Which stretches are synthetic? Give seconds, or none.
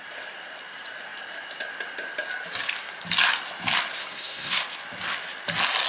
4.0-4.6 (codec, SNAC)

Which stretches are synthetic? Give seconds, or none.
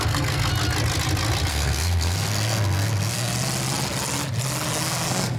0.0-0.5 (codec, SNAC); 1.5-3.3; 4.7-5.4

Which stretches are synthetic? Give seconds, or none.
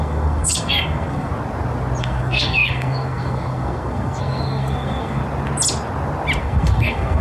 0.0-1.3 (codec, SNAC); 2.0-5.2; 6.4-7.2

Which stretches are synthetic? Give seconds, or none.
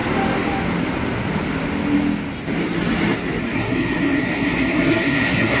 3.4-5.6 (codec, SNAC)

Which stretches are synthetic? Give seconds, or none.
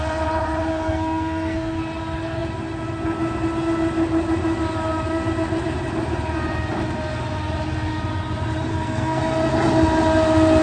0.7-1.8 (codec, SNAC); 8.7-9.2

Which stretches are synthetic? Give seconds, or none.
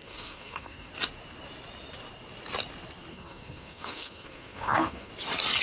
0.0-0.9 (codec, SNAC); 3.1-5.1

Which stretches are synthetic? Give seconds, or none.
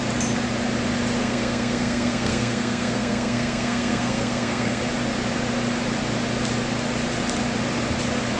1.2-4.8 (codec, SNAC)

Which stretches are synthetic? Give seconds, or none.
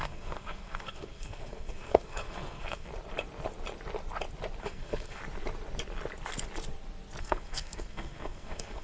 0.0-2.9 (codec, SNAC); 4.6-5.2; 7.2-8.8